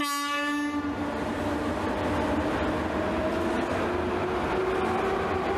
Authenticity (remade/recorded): recorded